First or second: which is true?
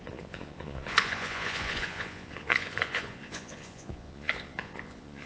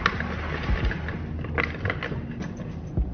second